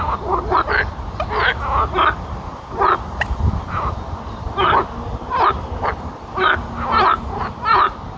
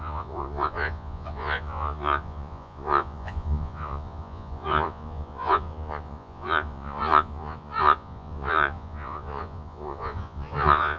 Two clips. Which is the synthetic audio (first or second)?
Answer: second